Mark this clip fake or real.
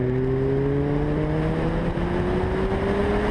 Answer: real